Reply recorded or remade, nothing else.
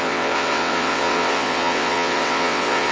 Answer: remade